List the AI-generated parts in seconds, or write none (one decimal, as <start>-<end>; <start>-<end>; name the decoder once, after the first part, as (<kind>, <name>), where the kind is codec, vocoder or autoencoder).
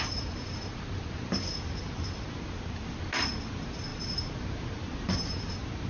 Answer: none